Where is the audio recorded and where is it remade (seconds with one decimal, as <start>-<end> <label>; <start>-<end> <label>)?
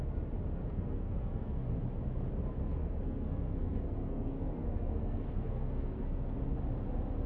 0.0-0.6 recorded; 0.6-1.7 remade; 1.7-2.8 recorded; 2.8-6.3 remade; 6.3-7.3 recorded